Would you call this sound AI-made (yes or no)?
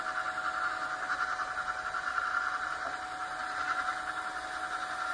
no